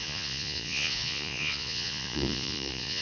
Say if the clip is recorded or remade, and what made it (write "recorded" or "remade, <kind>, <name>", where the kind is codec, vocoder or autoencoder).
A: remade, vocoder, Vocos